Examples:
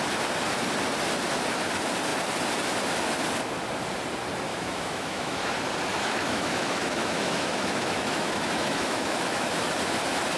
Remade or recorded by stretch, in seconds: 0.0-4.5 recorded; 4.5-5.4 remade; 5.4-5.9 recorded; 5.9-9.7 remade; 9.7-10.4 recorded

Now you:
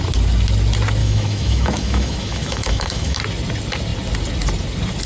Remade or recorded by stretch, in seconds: 0.0-1.0 recorded; 1.0-3.2 remade; 3.2-5.1 recorded

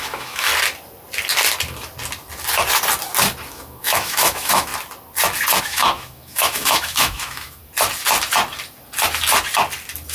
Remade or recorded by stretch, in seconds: 0.0-0.5 remade; 0.5-3.5 recorded; 3.5-4.7 remade; 4.7-5.6 recorded; 5.6-7.6 remade; 7.6-10.1 recorded

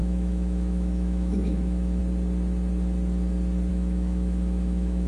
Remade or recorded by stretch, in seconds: 0.0-2.0 remade; 2.0-3.7 recorded; 3.7-5.1 remade

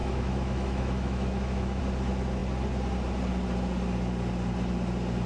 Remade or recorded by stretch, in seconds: 0.0-1.8 remade; 1.8-5.3 recorded